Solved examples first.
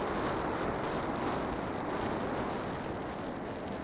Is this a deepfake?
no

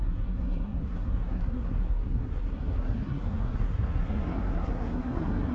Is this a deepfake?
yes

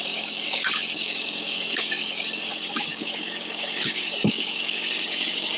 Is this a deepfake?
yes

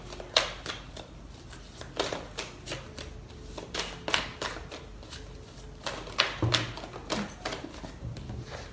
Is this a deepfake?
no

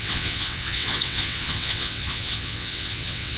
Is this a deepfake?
yes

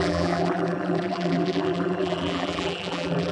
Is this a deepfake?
yes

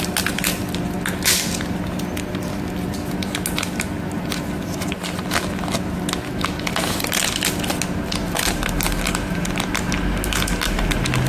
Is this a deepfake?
no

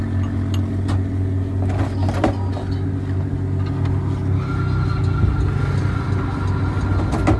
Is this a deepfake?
no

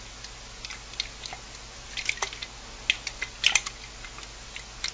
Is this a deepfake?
no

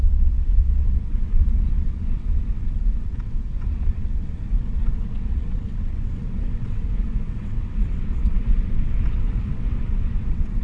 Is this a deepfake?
yes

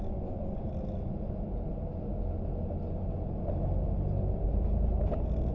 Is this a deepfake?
no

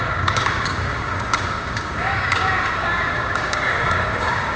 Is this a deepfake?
yes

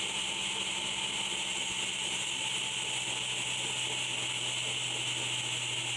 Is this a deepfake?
no